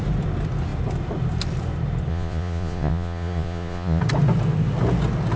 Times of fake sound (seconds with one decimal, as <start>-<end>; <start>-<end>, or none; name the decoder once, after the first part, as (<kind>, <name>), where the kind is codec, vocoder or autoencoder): 2.1-4.0 (vocoder, Vocos)